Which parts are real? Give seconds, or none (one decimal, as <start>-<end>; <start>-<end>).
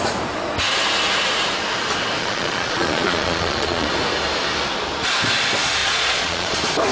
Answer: 0.0-2.2; 3.9-5.8; 6.5-6.9